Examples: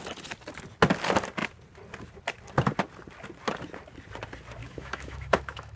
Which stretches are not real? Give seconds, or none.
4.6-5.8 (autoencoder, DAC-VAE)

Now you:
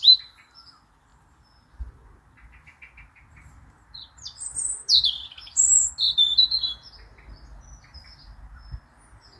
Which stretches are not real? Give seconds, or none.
6.4-6.9 (vocoder, Vocos)